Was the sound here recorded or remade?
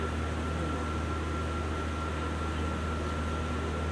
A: recorded